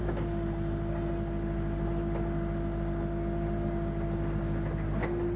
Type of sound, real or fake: real